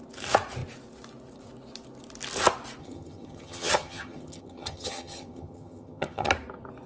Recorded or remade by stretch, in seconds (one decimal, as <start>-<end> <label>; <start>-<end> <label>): 0.0-2.8 recorded; 2.8-6.3 remade; 6.3-6.9 recorded